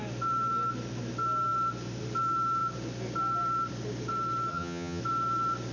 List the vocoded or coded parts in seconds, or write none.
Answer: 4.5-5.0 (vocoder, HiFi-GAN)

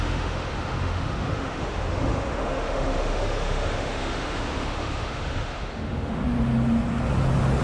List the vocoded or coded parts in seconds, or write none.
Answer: 0.0-6.2 (autoencoder, DAC-VAE)

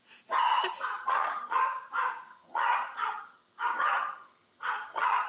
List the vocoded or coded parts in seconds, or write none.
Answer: 0.5-1.9 (vocoder, HiFi-GAN); 2.3-5.3